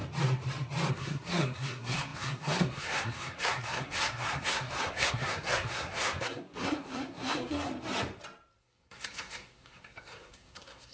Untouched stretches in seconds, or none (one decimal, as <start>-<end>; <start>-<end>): 0.0-0.9; 7.7-8.6